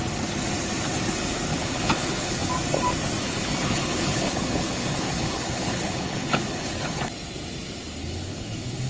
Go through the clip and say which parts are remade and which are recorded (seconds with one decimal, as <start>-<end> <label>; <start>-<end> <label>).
0.0-1.5 recorded; 1.5-2.5 remade; 2.5-3.2 recorded; 3.2-7.1 remade; 7.1-8.0 recorded; 8.0-8.9 remade

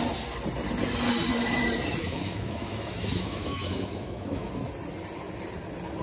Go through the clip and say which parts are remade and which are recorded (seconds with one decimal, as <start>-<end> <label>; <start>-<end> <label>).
0.0-2.0 recorded; 2.0-4.5 remade; 4.5-6.0 recorded